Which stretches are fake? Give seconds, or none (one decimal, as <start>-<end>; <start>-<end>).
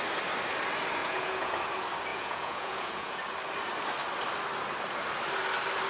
1.0-1.5; 2.1-3.2